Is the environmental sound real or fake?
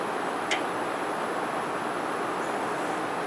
real